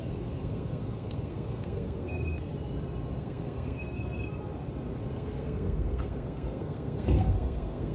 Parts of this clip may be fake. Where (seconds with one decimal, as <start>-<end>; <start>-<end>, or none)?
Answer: 0.0-2.5; 3.2-4.3; 5.1-7.9